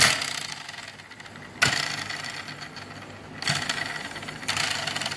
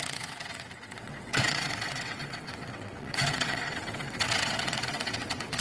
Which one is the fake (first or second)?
second